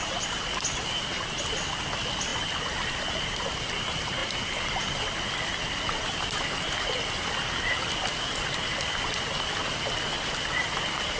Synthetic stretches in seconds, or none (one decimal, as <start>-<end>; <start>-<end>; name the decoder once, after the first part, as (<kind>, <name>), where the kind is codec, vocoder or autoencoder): none